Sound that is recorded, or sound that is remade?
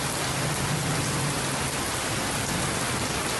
recorded